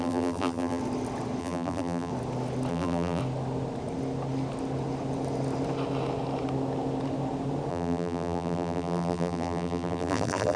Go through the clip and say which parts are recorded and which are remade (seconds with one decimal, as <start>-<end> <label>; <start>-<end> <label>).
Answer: 0.0-0.8 remade; 0.8-1.4 recorded; 1.4-2.1 remade; 2.1-2.7 recorded; 2.7-3.2 remade; 3.2-7.7 recorded; 7.7-10.6 remade